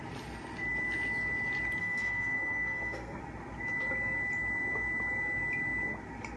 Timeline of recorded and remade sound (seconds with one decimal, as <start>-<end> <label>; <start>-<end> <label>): 0.0-1.8 recorded; 1.8-3.2 remade; 3.2-6.4 recorded